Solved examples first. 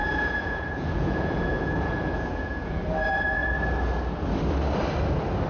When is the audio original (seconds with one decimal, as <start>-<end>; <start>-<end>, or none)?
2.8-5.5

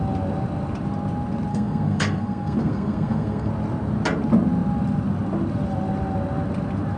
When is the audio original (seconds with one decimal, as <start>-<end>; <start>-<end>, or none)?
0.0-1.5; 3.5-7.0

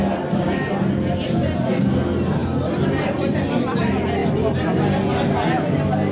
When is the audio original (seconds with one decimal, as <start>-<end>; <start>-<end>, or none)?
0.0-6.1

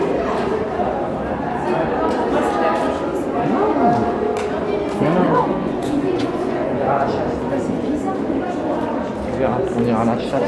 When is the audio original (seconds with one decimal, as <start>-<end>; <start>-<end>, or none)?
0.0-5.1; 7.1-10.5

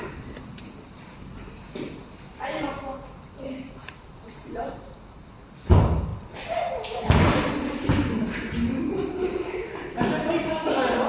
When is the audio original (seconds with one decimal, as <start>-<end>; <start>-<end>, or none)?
0.0-3.8; 5.4-11.1